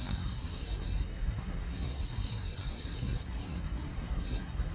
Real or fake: fake